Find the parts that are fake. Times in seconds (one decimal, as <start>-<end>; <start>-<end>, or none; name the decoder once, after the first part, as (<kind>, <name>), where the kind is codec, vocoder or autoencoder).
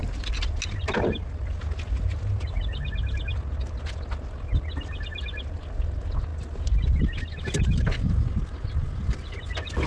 none